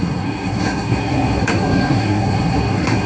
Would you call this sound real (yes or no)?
no